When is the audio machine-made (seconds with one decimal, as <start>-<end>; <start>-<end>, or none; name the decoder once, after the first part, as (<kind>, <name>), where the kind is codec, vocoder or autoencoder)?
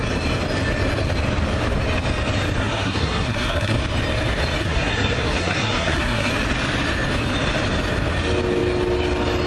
2.6-3.8 (codec, SNAC); 4.6-6.3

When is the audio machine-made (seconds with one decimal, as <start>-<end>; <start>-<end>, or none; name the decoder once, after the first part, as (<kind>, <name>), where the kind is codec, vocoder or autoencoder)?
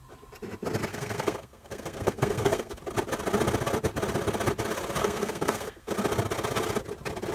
0.9-2.8 (codec, SNAC); 5.0-5.9